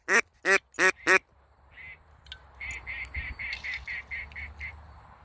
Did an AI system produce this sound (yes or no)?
no